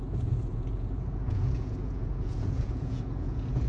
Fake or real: fake